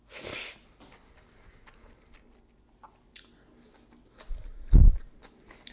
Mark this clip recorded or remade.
recorded